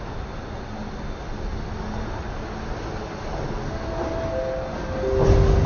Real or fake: real